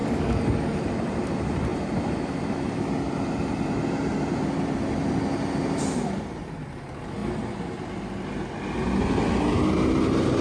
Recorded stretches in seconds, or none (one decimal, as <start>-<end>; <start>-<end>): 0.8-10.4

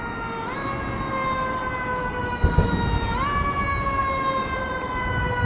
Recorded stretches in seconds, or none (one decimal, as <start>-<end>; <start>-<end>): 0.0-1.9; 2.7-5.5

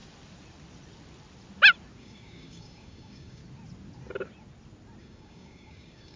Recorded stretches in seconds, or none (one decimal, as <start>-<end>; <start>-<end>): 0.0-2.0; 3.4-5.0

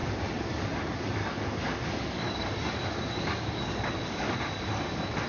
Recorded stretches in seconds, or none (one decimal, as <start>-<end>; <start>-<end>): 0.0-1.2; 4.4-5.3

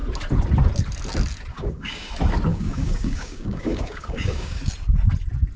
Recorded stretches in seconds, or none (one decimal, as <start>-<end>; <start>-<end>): 0.0-1.5; 2.1-2.5; 4.6-5.6